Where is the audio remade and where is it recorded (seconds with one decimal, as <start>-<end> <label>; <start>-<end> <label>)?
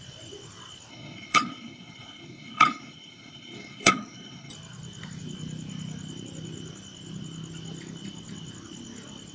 0.0-0.9 recorded; 0.9-4.5 remade; 4.5-9.3 recorded